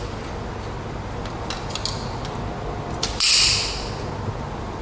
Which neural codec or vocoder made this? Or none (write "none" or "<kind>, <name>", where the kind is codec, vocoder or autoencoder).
none